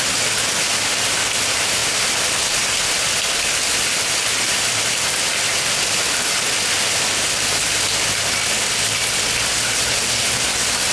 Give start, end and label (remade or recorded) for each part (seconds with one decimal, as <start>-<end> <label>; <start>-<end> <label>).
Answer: 0.0-10.9 recorded

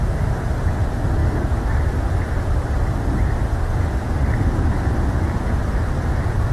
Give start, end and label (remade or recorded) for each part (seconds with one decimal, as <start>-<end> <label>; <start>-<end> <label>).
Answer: 0.0-6.5 recorded

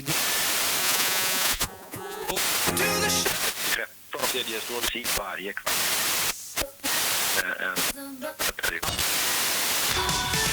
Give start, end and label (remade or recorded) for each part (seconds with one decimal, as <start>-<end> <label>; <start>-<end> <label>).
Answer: 0.0-0.8 recorded; 0.8-2.3 remade; 2.3-10.5 recorded

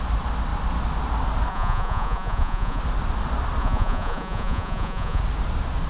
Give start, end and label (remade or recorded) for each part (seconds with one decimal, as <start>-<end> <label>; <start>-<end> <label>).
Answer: 0.0-1.5 recorded; 1.5-2.8 remade; 2.8-3.6 recorded; 3.6-5.2 remade; 5.2-5.9 recorded

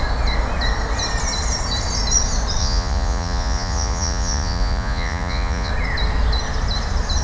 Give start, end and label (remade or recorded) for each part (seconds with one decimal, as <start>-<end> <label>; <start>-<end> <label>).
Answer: 0.0-2.6 recorded; 2.6-5.7 remade; 5.7-7.2 recorded

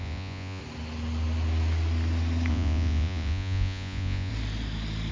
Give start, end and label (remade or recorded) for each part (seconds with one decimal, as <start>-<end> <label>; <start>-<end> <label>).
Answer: 0.0-0.6 remade; 0.6-2.5 recorded; 2.5-4.3 remade; 4.3-5.1 recorded